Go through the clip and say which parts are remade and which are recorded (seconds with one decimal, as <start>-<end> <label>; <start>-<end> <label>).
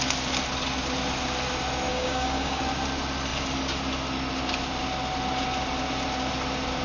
0.0-1.9 recorded; 1.9-2.6 remade; 2.6-6.8 recorded